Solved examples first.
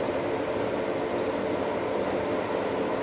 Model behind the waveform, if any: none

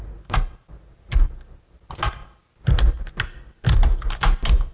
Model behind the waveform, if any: none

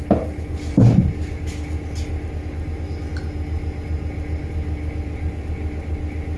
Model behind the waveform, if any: none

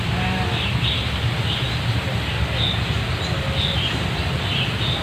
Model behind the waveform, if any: none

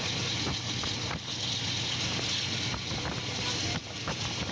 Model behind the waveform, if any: none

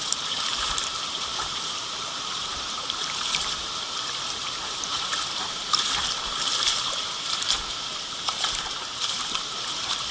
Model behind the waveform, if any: vocoder, BigVGAN v2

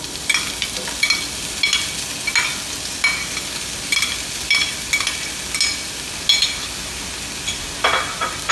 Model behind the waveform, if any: none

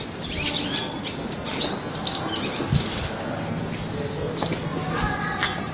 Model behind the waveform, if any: none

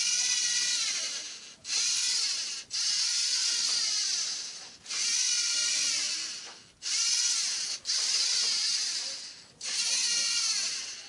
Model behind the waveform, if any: none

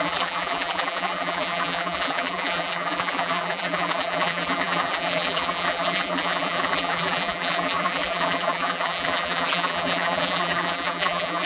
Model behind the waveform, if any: vocoder, BigVGAN v2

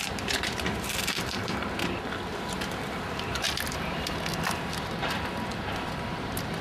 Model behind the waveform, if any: vocoder, BigVGAN v2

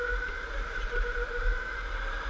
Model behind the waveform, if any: vocoder, BigVGAN v2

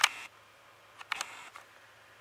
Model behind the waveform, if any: none